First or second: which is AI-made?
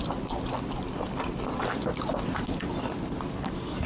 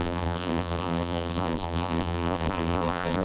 second